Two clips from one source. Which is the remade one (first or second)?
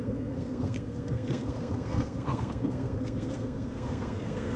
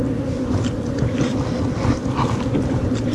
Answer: first